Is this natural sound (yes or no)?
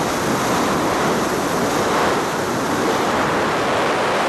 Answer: yes